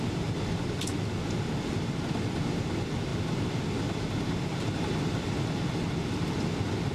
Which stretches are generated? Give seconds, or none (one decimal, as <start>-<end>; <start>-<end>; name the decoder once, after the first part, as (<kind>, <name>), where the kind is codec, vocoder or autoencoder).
none